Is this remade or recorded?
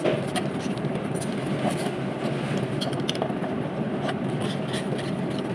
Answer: recorded